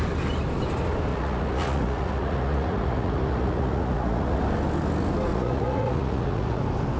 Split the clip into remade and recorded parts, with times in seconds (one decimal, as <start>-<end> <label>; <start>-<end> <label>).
0.0-1.1 recorded; 1.1-4.4 remade; 4.4-5.3 recorded; 5.3-6.6 remade; 6.6-7.0 recorded